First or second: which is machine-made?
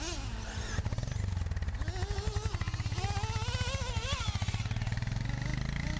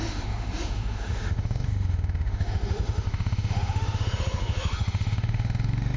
second